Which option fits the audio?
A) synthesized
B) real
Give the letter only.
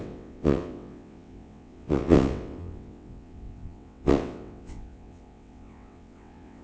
A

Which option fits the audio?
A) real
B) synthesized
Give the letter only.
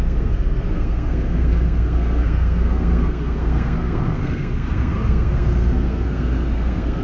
B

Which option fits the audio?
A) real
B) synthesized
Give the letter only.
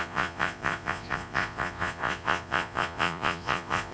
B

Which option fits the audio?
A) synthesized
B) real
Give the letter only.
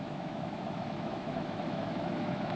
A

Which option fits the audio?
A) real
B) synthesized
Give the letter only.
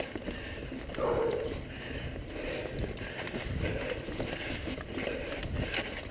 A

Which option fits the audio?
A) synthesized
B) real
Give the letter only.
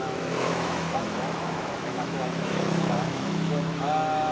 A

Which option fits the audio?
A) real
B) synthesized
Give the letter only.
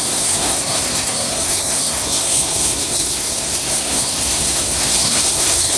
B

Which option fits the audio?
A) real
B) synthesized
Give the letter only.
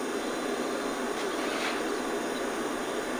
A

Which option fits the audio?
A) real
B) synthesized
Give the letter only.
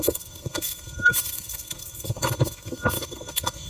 B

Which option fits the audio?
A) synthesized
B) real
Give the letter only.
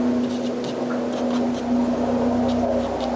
B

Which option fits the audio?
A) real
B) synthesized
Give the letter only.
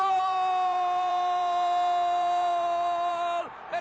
B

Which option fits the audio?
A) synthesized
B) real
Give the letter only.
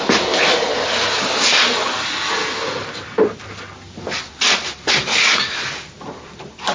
B